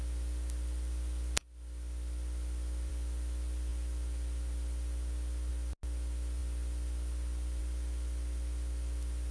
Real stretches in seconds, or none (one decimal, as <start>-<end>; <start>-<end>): 0.0-9.3